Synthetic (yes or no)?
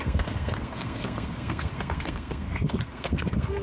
yes